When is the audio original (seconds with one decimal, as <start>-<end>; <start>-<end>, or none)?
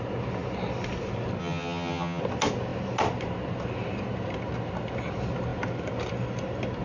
0.0-1.4; 2.2-6.8